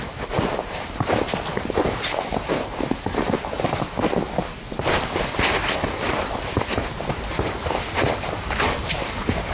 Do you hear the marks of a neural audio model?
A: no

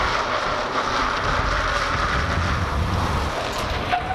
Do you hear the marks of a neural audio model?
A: no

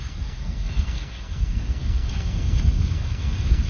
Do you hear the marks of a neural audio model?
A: yes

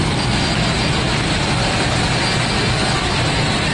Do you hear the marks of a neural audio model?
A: no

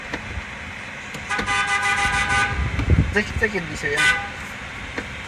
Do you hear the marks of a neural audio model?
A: no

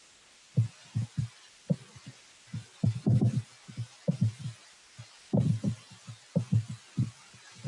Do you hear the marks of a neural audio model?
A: no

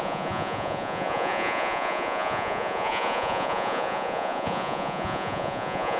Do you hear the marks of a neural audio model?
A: yes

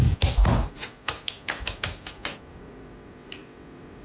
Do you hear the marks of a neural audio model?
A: no